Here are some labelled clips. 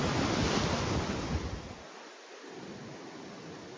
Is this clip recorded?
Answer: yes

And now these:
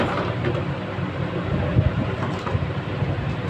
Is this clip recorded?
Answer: no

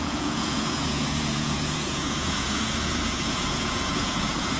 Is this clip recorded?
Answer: no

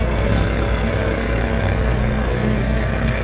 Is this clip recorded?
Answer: no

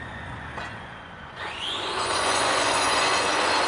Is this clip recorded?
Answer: no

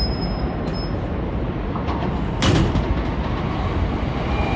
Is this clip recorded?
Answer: yes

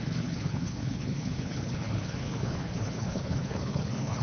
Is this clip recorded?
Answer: no